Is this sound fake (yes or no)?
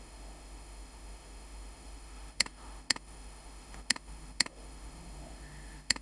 yes